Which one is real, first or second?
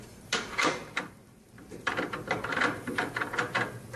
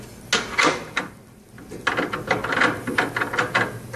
second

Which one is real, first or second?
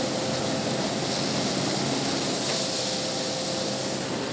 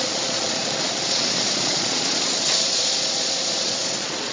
first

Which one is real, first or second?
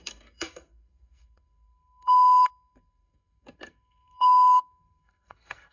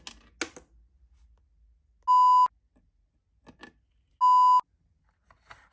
second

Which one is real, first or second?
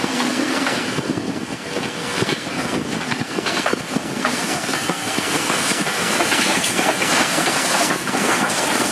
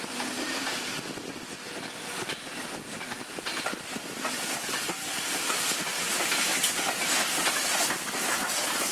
second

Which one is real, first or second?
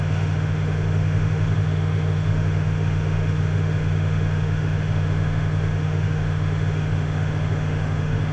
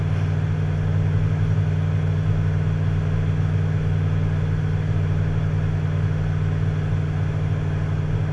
second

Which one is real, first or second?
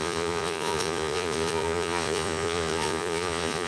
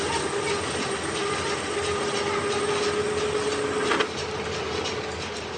second